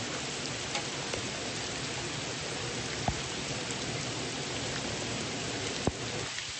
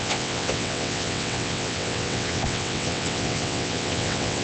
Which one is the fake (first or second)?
second